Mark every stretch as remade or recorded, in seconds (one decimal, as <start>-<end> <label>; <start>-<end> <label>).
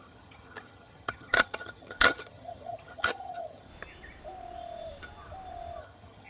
0.0-3.7 remade; 3.7-5.8 recorded; 5.8-6.3 remade